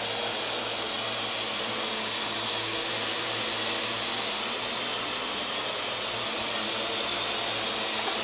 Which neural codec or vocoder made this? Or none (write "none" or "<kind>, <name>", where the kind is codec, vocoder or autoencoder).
none